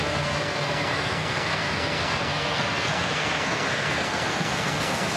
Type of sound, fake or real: fake